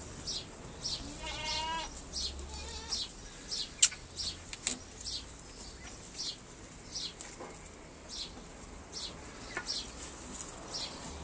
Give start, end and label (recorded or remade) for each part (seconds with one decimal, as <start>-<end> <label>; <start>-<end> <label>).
0.0-11.2 recorded